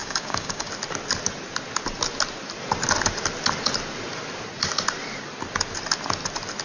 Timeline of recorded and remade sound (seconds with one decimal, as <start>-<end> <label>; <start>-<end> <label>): 0.0-0.7 remade; 0.7-6.6 recorded